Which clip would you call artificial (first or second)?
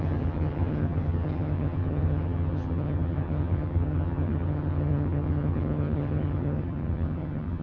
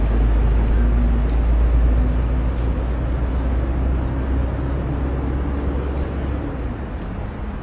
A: first